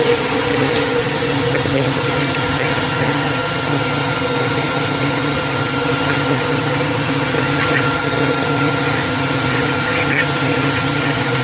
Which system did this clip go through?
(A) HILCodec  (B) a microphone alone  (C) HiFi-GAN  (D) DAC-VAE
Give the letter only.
C